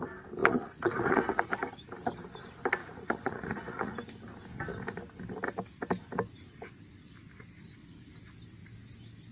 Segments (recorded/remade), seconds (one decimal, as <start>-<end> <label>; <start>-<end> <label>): 0.0-0.4 recorded; 0.4-1.5 remade; 1.5-2.8 recorded; 2.8-3.9 remade; 3.9-9.3 recorded